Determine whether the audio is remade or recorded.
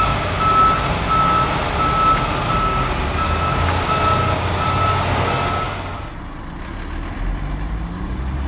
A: recorded